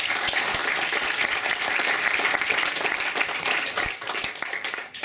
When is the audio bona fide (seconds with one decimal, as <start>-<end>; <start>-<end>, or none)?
0.6-3.6